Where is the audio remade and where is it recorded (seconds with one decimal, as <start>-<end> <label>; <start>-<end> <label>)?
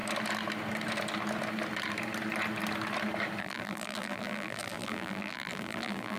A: 0.0-3.4 recorded; 3.4-6.2 remade